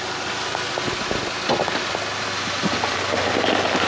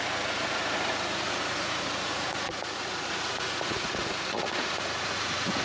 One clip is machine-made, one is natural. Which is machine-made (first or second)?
second